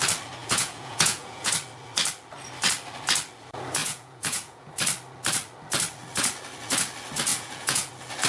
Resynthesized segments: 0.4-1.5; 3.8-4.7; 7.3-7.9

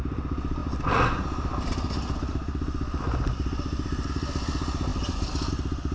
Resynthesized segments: none

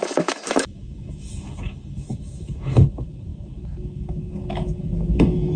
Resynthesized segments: 0.0-5.6

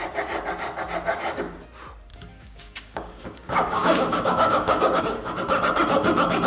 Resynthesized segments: 2.1-5.0

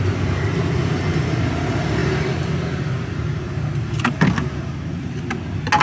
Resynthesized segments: 2.0-5.2

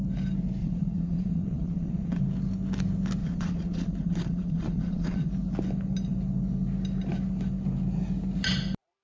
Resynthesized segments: 0.6-2.2; 3.2-5.3

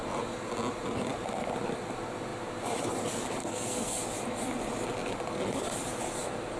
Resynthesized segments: 3.4-4.0